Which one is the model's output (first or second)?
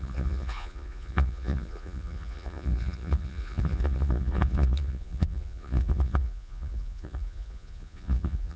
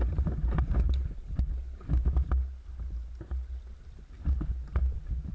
first